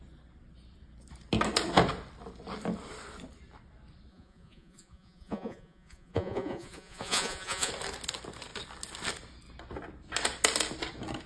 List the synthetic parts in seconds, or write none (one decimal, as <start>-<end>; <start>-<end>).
4.1-7.7

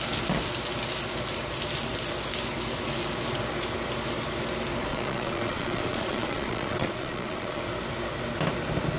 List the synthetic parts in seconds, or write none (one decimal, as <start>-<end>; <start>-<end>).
4.9-7.6

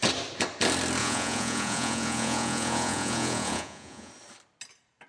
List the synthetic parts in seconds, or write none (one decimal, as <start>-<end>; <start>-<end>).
1.0-4.1

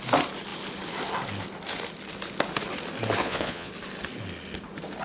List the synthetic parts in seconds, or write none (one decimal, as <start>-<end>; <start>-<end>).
3.2-3.7

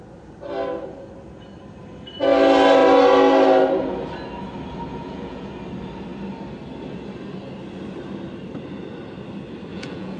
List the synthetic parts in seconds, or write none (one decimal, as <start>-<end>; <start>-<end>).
4.9-5.5; 9.7-10.2

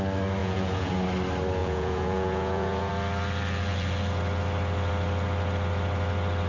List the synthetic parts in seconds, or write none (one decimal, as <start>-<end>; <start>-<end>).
0.4-0.9; 1.6-2.9

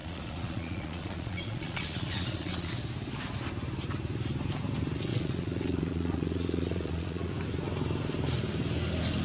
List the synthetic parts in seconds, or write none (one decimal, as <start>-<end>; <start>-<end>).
0.0-2.7; 5.1-7.3

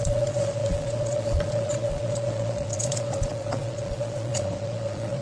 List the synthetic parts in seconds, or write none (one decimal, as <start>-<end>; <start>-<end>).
0.0-5.2